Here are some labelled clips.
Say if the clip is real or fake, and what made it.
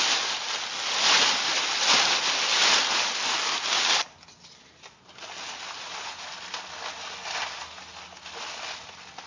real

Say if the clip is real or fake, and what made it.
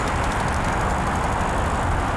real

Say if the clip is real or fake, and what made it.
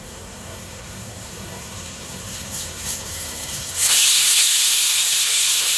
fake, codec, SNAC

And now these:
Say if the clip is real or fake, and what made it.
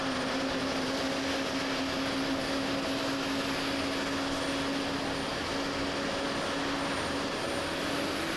real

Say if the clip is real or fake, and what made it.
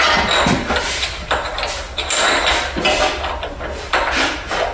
real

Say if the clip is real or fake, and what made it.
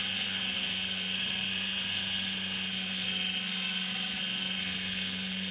fake, codec, SNAC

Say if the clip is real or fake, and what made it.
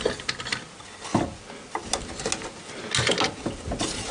real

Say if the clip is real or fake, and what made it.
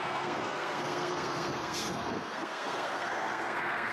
fake, codec, SNAC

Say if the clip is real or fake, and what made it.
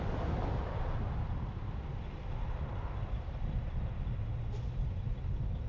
real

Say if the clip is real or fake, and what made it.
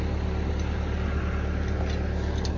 real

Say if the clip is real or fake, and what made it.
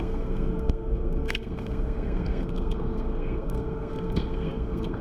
fake, codec, SNAC